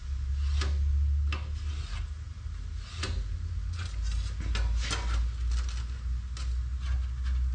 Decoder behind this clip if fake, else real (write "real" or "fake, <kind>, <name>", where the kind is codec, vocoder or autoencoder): real